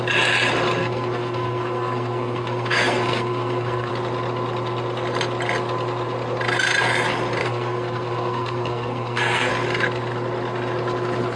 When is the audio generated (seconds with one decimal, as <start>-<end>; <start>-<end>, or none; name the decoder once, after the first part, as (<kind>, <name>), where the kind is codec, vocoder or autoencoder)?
0.8-3.9 (codec, SNAC); 7.4-9.5